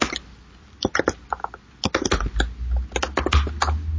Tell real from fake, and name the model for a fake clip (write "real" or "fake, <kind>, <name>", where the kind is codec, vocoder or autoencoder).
real